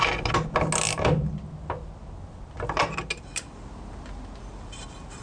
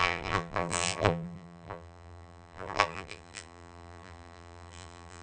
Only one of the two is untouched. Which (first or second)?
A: first